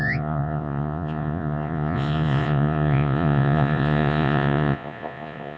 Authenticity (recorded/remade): remade